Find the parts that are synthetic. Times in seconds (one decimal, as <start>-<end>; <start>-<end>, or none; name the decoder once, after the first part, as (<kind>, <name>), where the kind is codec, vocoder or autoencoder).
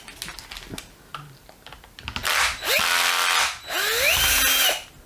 none